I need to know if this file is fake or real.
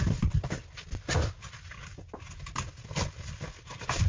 real